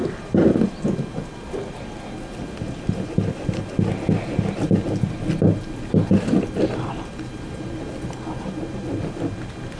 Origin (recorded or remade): recorded